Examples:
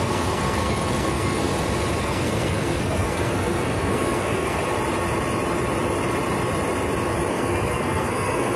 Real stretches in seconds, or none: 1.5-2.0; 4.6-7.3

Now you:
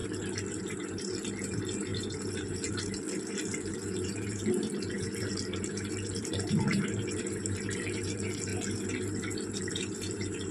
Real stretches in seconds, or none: 0.0-0.6; 8.5-9.7

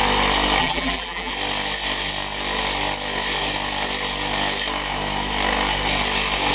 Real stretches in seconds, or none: 0.0-0.6; 1.3-6.5

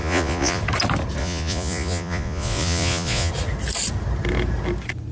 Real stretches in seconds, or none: 0.6-1.2; 3.3-5.1

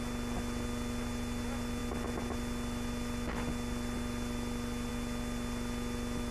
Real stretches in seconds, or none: 0.0-6.3

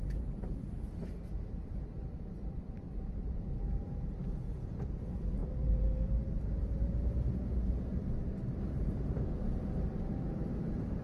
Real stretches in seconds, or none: 8.0-8.6

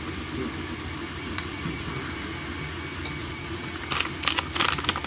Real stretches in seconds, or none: 0.0-1.2; 1.9-3.2; 3.8-5.1

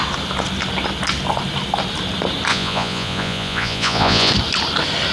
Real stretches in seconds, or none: 0.0-2.5; 4.3-5.1